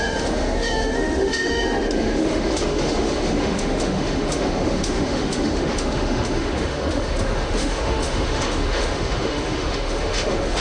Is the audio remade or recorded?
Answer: remade